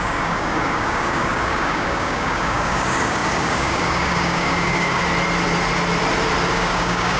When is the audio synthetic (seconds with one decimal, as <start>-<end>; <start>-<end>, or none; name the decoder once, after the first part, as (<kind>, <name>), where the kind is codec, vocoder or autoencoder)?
0.0-5.0 (codec, DAC); 6.5-7.2